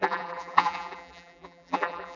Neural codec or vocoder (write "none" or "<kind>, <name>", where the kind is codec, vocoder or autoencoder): vocoder, BigVGAN v2